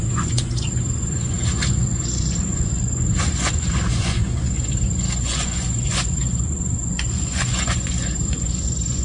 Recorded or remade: remade